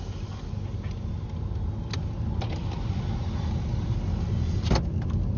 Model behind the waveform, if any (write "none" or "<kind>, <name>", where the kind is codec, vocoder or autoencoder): none